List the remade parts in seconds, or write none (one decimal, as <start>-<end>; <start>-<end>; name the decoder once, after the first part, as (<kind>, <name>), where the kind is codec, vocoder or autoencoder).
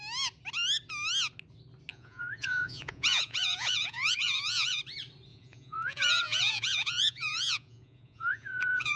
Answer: 1.9-4.8 (vocoder, Vocos); 5.3-9.0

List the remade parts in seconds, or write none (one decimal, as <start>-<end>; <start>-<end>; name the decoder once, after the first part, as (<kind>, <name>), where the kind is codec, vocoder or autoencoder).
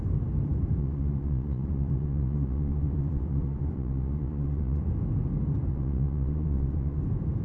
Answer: 0.8-4.9 (vocoder, Vocos); 5.7-7.0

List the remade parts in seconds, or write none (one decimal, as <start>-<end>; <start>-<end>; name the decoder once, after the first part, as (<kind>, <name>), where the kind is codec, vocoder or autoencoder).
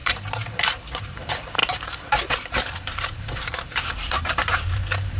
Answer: 1.0-5.2 (vocoder, BigVGAN v2)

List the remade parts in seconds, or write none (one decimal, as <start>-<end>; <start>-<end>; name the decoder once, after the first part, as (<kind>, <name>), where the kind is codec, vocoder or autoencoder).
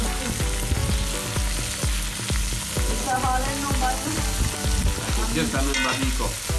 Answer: none